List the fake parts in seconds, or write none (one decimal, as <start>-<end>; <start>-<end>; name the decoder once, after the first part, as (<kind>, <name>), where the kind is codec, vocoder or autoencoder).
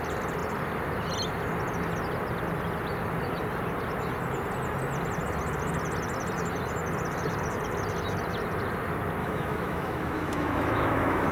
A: 9.2-11.3 (autoencoder, DAC-VAE)